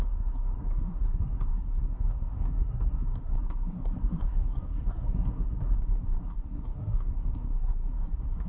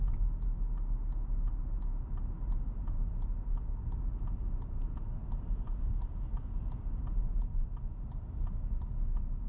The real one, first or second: second